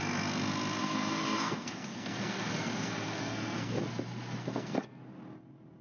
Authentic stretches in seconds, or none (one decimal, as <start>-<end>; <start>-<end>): 0.0-0.8; 3.8-4.4; 5.0-5.8